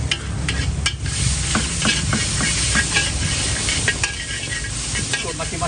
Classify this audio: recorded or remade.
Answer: recorded